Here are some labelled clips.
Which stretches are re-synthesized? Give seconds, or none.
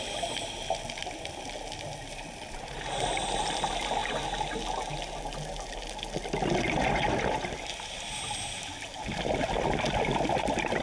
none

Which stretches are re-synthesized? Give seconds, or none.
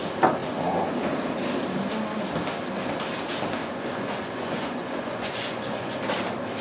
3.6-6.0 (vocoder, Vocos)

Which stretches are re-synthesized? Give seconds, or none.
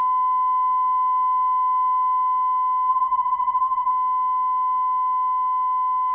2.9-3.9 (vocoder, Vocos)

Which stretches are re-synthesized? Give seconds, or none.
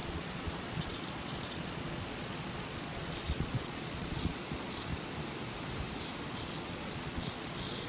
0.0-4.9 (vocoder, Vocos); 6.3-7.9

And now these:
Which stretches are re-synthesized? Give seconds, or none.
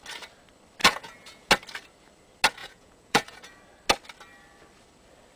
0.8-1.5 (vocoder, Vocos); 2.6-3.6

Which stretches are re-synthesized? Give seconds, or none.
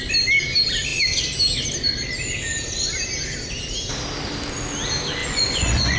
5.2-6.0 (vocoder, Vocos)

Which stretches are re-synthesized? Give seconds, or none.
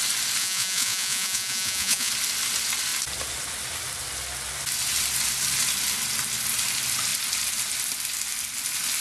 0.4-2.1 (vocoder, Vocos)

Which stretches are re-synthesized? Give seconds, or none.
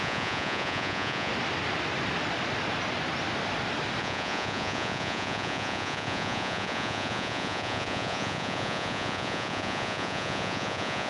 0.0-1.3 (vocoder, Vocos); 4.0-11.1